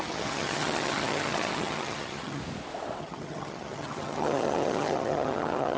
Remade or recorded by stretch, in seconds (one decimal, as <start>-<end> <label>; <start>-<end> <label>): 0.0-2.4 remade; 2.4-3.0 recorded; 3.0-5.8 remade